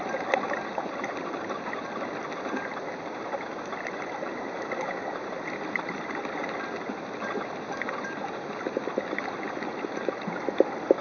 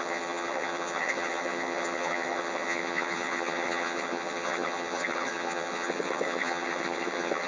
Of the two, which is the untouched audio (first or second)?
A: first